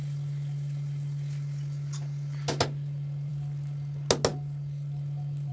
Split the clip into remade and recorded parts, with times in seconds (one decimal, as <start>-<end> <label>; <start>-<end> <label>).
0.0-5.5 recorded